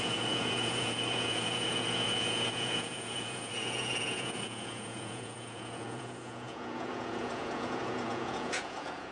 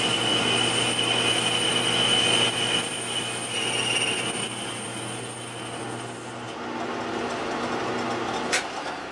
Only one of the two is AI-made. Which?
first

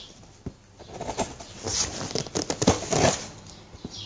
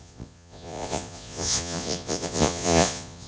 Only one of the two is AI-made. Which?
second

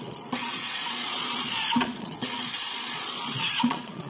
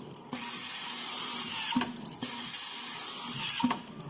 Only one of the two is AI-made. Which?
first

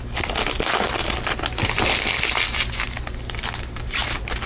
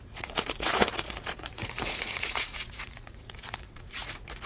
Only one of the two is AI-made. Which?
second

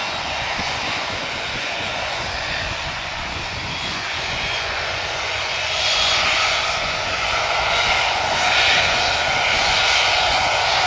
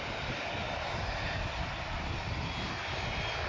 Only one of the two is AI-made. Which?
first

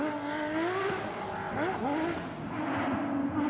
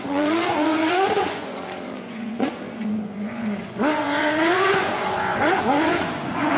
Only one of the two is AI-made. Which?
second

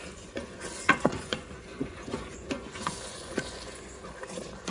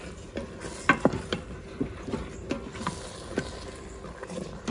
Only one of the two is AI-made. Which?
first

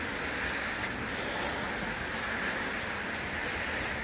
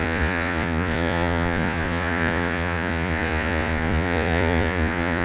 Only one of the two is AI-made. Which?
second